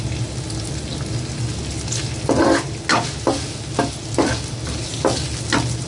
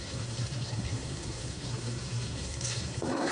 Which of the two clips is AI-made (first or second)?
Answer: second